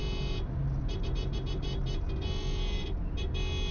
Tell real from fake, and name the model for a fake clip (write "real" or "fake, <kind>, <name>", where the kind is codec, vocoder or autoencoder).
real